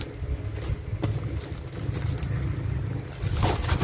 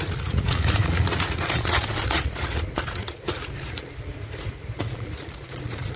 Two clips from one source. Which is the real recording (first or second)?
first